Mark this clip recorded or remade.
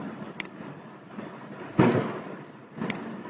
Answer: recorded